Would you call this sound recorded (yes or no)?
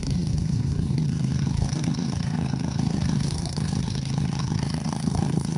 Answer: no